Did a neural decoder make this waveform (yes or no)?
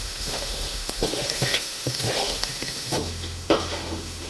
yes